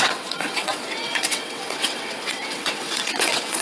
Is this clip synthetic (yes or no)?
yes